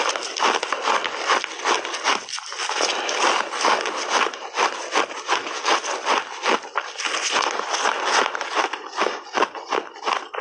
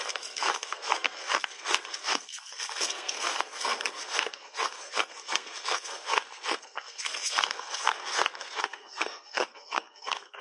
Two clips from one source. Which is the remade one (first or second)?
second